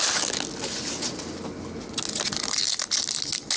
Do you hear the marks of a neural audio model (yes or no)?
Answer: no